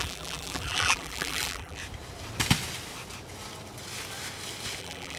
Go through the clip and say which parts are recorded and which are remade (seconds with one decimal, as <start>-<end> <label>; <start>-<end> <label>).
0.0-1.8 remade; 1.8-4.8 recorded; 4.8-5.2 remade